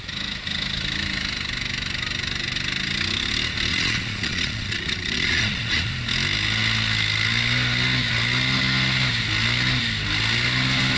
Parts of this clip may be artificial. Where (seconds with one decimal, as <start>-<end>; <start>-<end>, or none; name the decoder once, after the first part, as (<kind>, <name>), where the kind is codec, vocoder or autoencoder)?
3.7-5.9 (vocoder, Vocos)